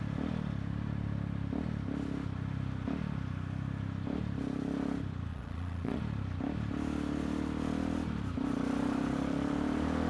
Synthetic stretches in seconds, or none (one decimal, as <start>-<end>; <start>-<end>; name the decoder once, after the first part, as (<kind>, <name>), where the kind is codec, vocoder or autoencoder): 5.3-6.0 (vocoder, Vocos)